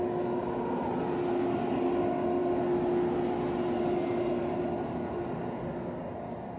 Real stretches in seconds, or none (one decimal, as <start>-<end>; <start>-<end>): 0.0-6.6